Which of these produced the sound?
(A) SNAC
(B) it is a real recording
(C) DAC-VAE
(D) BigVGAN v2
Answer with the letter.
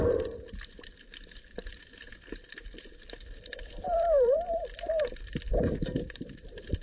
D